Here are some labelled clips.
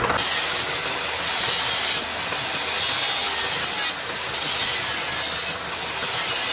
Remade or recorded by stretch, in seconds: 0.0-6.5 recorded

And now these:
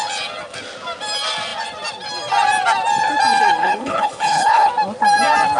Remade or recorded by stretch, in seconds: 0.0-3.6 recorded; 3.6-4.7 remade; 4.7-5.6 recorded

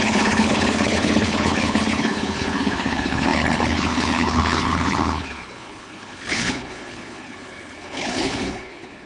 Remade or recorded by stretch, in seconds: 0.0-9.1 remade

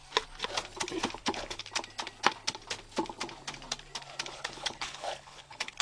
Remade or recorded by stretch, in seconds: 0.0-1.2 recorded; 1.2-1.6 remade; 1.6-4.3 recorded; 4.3-5.8 remade

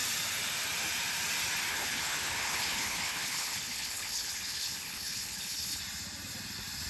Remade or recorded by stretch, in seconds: 0.0-1.7 recorded; 1.7-5.8 remade; 5.8-6.9 recorded